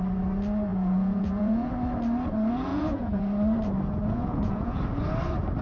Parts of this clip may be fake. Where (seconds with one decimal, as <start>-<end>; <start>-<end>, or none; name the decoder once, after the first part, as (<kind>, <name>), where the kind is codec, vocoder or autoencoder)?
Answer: 0.7-1.7 (vocoder, Vocos); 2.7-3.2; 4.0-4.8